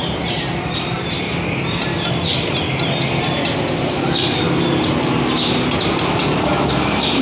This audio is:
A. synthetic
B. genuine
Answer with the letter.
B